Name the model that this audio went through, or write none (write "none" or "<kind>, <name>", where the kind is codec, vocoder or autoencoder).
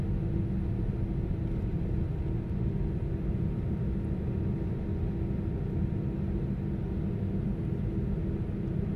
none